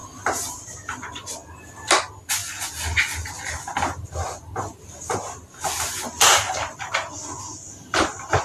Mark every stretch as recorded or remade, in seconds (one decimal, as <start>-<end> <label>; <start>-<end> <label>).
0.0-8.4 recorded